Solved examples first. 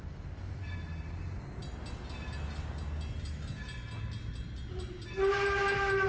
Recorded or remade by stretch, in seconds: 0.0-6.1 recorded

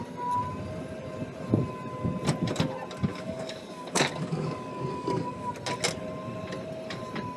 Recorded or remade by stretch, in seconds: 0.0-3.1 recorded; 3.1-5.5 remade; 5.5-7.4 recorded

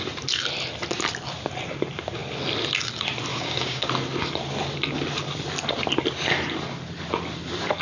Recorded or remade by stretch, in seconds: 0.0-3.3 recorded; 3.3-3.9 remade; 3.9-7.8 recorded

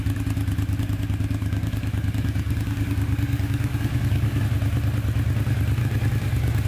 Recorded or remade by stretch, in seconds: 0.0-1.4 recorded; 1.4-4.4 remade; 4.4-5.8 recorded; 5.8-6.7 remade

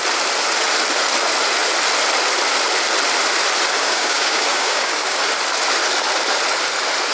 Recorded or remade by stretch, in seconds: 0.0-3.8 recorded; 3.8-5.2 remade; 5.2-7.1 recorded

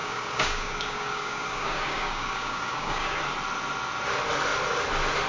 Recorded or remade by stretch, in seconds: 0.0-3.2 remade; 3.2-5.3 recorded